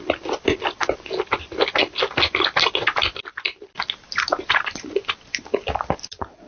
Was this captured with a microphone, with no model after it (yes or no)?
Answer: yes